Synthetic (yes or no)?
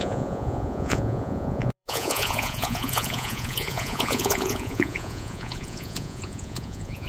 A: yes